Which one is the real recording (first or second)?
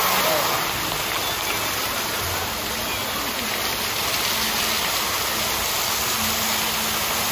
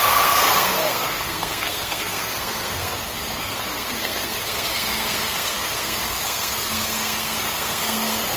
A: first